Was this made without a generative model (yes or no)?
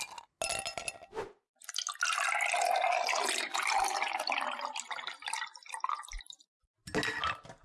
yes